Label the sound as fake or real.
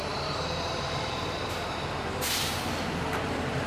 fake